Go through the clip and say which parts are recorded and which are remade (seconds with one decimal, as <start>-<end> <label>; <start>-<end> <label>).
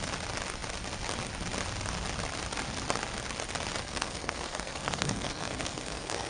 0.0-3.8 recorded; 3.8-6.3 remade